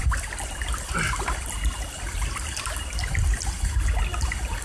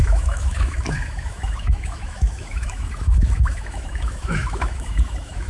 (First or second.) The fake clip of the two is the second